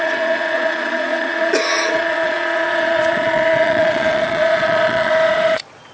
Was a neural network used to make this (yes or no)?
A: yes